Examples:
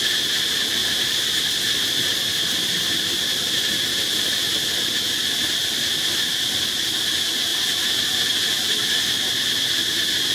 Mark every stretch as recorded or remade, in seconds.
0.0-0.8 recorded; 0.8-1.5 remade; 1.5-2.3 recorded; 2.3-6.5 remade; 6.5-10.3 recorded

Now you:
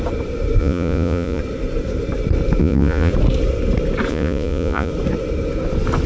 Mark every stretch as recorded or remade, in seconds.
0.0-0.6 recorded; 0.6-1.4 remade; 1.4-2.6 recorded; 2.6-3.1 remade; 3.1-4.1 recorded; 4.1-4.9 remade; 4.9-6.1 recorded

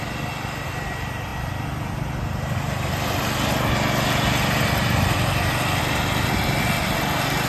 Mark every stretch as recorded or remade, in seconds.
0.0-7.5 recorded

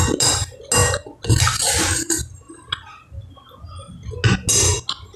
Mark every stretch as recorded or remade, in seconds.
0.0-5.2 recorded

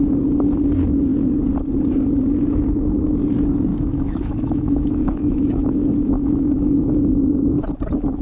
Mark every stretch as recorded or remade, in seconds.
0.0-3.7 recorded; 3.7-7.6 remade; 7.6-8.2 recorded

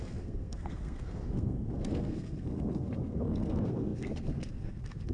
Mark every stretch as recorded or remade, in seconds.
0.0-5.1 remade

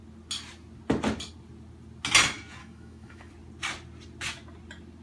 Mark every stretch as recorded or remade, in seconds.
0.0-2.6 recorded; 2.6-3.3 remade; 3.3-5.0 recorded

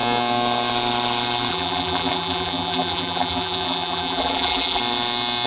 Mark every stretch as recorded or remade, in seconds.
0.0-1.5 recorded; 1.5-4.8 remade; 4.8-5.5 recorded